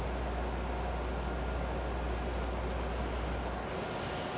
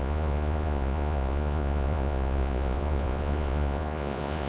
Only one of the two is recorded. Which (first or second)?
first